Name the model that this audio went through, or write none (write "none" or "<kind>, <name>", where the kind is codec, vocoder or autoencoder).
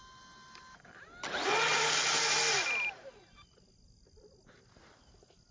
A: none